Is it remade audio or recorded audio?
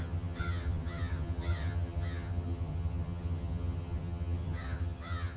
remade